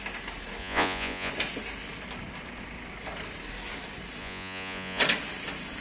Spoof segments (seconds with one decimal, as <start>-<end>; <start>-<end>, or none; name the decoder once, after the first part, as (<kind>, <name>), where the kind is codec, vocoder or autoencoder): 0.6-1.3 (vocoder, Vocos); 4.2-5.0